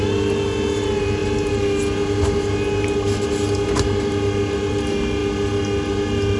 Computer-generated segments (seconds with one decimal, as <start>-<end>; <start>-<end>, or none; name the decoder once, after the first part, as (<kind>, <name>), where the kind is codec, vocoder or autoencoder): none